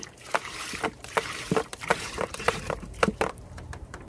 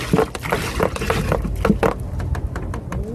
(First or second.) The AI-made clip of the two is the first